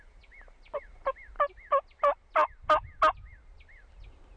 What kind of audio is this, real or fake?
real